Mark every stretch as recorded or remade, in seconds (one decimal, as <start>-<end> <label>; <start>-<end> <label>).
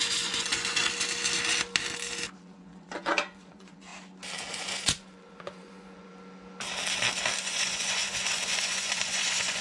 0.0-0.8 remade; 0.8-2.4 recorded; 2.4-3.9 remade; 3.9-4.5 recorded; 4.5-6.1 remade; 6.1-7.4 recorded; 7.4-9.6 remade